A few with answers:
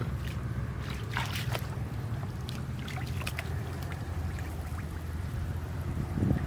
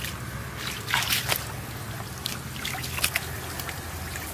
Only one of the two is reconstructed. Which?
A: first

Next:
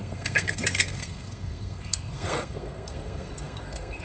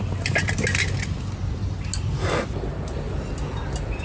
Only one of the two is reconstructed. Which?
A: first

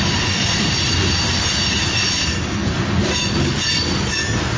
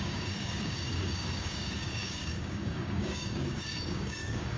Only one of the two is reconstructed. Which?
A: second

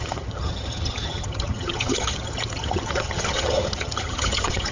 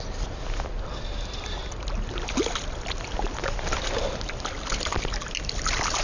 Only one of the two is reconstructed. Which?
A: first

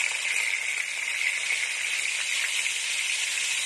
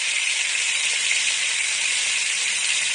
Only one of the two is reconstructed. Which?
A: second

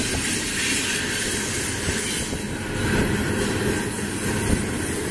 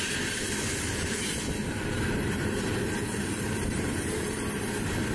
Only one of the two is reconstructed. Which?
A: second